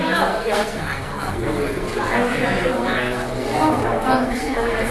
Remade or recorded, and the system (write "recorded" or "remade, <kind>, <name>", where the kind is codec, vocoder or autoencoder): remade, codec, SNAC